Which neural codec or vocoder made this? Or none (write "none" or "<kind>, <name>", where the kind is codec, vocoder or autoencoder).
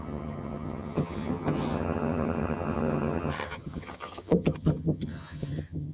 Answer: vocoder, HiFi-GAN